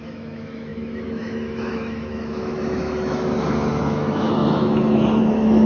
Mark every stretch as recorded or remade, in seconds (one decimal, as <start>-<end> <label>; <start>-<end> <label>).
0.0-5.7 remade